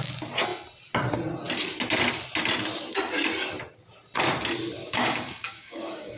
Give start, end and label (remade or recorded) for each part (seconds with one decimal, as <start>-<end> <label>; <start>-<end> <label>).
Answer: 0.0-4.8 recorded; 4.8-6.2 remade